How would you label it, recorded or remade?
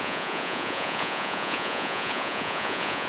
remade